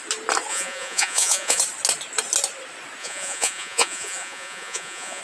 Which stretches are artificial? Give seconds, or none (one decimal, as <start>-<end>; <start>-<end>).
0.5-1.6; 3.0-5.2

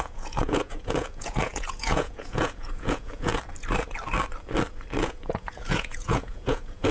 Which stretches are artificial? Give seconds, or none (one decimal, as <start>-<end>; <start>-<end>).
0.0-3.3; 5.0-6.9

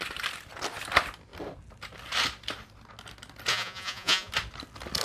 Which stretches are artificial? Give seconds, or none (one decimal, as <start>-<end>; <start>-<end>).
3.5-4.3

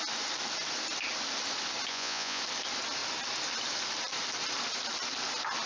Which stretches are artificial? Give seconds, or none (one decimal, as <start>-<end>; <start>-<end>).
1.9-2.4

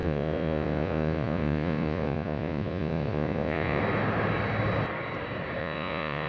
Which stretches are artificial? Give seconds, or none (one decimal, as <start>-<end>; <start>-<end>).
0.0-3.8; 5.6-6.3